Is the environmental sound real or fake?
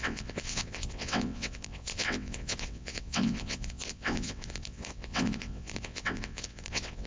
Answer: fake